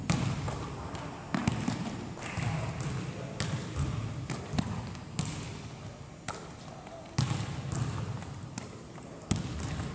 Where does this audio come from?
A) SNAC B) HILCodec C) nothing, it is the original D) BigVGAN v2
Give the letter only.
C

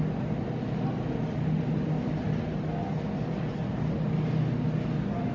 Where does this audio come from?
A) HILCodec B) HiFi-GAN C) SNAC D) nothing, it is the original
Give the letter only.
D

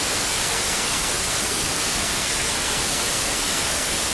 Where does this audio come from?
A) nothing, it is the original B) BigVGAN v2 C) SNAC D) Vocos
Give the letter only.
C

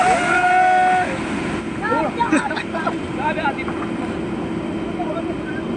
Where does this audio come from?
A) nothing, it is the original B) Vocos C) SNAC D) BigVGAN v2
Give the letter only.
A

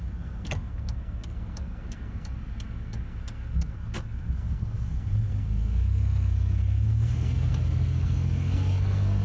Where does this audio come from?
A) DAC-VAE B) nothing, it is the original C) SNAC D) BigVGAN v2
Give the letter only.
C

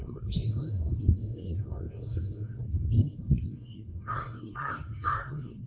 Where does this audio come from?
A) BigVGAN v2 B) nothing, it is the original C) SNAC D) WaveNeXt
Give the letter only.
C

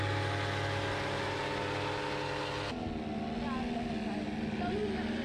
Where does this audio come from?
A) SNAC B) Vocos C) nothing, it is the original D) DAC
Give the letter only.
C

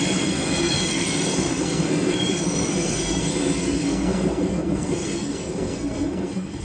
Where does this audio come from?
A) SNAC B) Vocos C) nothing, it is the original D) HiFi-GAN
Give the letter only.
A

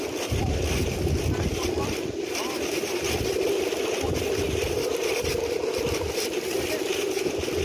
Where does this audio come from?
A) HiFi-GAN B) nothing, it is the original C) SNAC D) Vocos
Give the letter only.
B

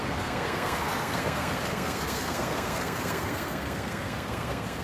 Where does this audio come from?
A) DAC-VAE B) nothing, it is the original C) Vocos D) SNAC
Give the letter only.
D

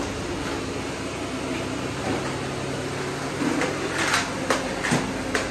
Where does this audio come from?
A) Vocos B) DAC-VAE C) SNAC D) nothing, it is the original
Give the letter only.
D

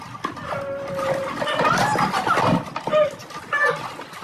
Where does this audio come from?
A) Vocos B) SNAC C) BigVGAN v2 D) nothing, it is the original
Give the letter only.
D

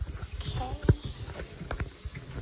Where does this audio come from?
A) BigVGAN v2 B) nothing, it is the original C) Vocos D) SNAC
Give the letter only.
B